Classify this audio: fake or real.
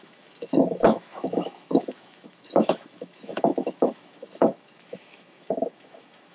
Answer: fake